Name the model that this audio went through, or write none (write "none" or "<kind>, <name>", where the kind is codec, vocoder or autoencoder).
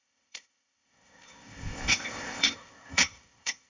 codec, ZipCodec